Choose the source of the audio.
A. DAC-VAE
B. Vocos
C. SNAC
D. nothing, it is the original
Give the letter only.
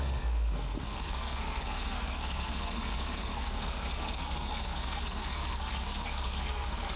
C